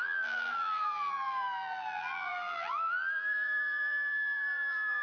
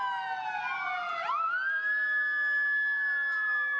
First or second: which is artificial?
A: first